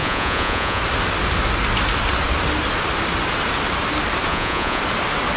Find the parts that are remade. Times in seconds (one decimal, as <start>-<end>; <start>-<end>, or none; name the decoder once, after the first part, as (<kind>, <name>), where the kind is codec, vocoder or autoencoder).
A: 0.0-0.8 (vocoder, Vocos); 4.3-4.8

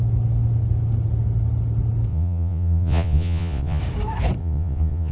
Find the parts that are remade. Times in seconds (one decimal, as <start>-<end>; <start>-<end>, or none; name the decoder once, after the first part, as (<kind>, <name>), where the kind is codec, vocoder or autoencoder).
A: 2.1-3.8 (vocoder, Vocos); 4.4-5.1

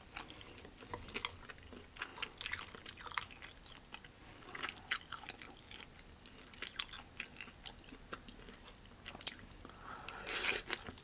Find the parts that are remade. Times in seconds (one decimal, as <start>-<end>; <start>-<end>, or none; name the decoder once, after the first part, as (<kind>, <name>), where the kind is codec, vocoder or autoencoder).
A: none

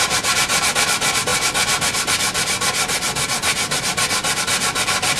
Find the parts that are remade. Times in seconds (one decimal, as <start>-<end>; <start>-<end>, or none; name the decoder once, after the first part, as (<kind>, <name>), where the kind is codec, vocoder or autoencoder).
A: none

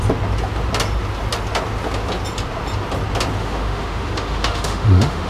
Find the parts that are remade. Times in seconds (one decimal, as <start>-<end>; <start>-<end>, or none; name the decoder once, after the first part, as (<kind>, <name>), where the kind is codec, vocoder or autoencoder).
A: 3.4-5.3 (autoencoder, DAC-VAE)

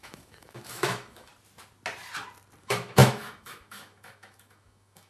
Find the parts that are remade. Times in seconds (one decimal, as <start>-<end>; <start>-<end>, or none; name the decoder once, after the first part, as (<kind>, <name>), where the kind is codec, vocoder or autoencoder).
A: 0.0-1.3 (autoencoder, DAC-VAE); 2.6-5.1

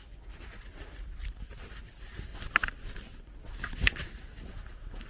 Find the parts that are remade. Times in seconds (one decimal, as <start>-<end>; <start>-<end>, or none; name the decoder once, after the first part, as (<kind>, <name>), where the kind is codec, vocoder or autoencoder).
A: none